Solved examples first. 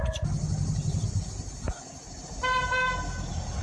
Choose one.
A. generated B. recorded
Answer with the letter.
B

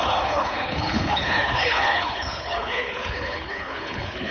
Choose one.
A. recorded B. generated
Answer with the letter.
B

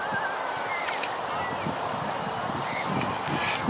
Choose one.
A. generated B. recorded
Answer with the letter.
B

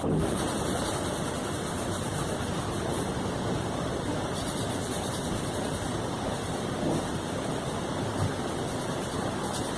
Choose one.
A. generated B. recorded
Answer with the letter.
B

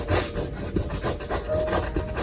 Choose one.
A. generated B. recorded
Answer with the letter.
B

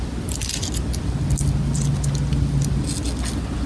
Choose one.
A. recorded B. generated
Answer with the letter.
A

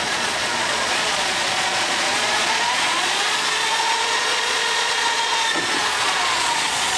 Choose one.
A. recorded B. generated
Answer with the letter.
B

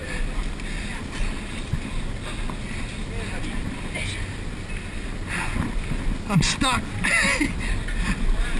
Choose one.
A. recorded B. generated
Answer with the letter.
A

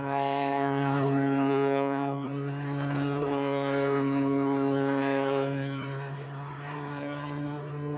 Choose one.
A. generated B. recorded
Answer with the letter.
A